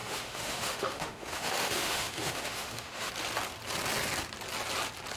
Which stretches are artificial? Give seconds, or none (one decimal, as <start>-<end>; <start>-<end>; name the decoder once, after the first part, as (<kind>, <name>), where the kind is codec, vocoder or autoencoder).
0.0-3.1 (autoencoder, DAC-VAE)